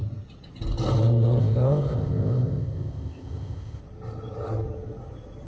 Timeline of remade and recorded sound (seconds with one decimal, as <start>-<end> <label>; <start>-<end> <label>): 0.0-1.4 recorded; 1.4-3.8 remade; 3.8-5.5 recorded